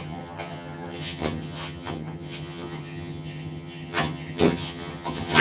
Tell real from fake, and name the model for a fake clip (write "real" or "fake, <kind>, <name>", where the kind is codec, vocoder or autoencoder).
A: fake, vocoder, HiFi-GAN